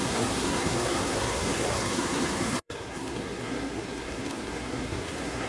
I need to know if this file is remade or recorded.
remade